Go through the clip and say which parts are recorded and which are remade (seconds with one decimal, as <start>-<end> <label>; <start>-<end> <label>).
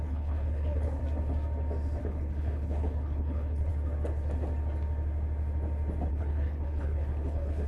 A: 0.0-1.0 remade; 1.0-2.0 recorded; 2.0-3.7 remade; 3.7-6.1 recorded; 6.1-7.7 remade